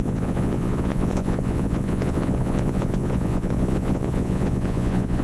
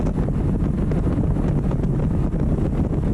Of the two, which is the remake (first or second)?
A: first